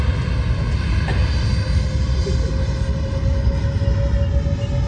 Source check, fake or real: real